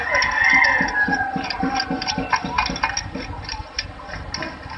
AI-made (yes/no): no